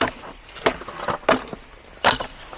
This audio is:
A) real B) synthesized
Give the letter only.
A